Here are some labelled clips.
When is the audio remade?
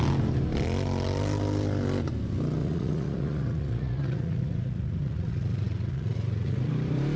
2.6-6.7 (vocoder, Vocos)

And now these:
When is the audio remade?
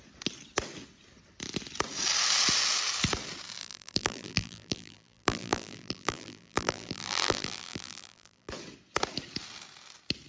3.6-8.5 (vocoder, BigVGAN v2)